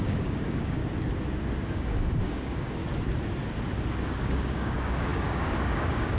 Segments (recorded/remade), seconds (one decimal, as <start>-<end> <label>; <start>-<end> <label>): 0.0-0.8 remade; 0.8-1.6 recorded; 1.6-2.8 remade; 2.8-4.2 recorded; 4.2-6.2 remade